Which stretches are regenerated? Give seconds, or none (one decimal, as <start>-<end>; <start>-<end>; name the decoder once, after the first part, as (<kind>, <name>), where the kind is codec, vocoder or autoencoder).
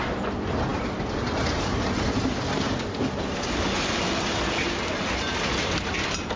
none